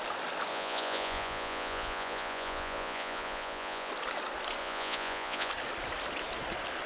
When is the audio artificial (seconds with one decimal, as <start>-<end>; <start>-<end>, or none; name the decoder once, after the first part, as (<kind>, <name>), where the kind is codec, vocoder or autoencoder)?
0.5-3.9 (vocoder, Vocos); 4.6-5.5